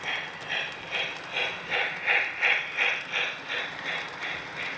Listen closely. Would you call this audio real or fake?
real